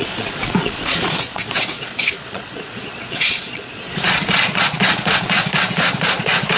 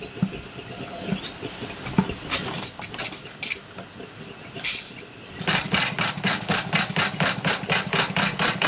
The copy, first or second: first